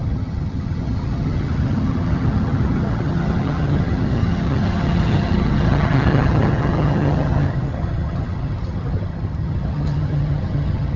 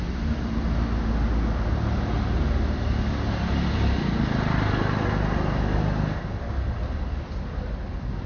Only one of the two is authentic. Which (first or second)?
second